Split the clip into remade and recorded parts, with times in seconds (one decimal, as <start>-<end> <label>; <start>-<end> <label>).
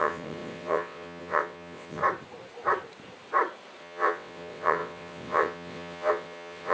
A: 0.0-2.0 remade; 2.0-3.8 recorded; 3.8-6.7 remade